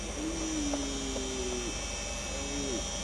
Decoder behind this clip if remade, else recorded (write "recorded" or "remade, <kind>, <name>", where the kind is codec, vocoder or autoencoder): recorded